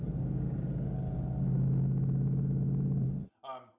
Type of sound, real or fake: real